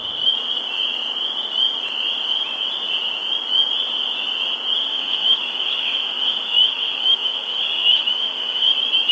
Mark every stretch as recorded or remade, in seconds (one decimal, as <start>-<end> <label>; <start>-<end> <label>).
0.0-4.8 recorded; 4.8-8.7 remade; 8.7-9.1 recorded